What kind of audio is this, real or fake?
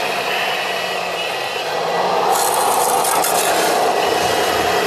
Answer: real